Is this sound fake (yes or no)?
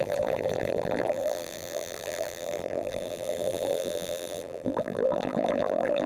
yes